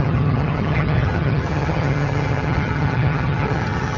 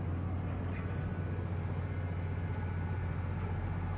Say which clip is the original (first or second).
second